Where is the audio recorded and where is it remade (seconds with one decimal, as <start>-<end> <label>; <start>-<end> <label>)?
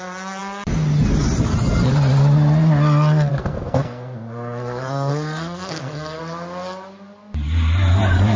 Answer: 0.0-3.3 recorded; 3.3-6.2 remade; 6.2-8.4 recorded